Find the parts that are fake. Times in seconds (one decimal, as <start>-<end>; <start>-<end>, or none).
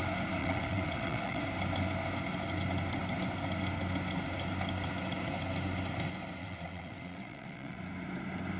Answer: 0.4-1.4; 6.4-7.8